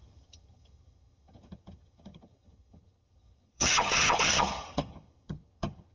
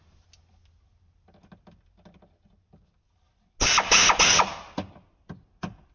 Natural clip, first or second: second